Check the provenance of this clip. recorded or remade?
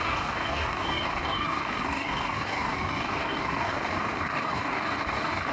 remade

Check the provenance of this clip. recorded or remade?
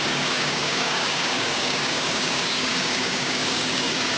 remade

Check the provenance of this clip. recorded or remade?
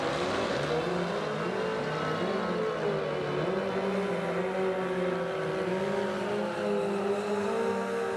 recorded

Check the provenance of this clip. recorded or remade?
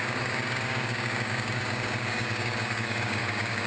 remade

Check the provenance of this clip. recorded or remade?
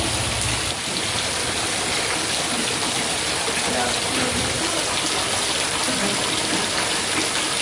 recorded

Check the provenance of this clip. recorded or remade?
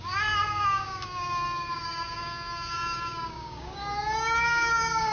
remade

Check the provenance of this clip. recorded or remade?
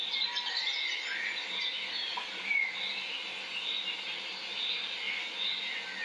recorded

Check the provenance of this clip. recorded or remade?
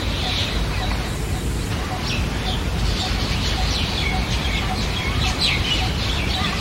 recorded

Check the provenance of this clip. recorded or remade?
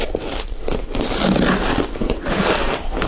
recorded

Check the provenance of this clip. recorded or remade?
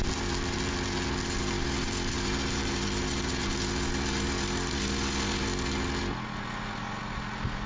recorded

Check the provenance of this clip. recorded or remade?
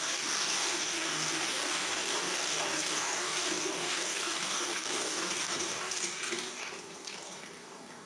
remade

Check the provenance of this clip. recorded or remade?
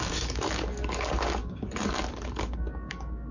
remade